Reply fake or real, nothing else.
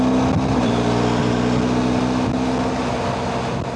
real